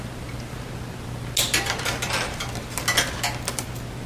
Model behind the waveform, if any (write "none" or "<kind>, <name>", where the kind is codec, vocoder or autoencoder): none